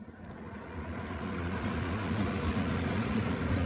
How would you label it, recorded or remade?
remade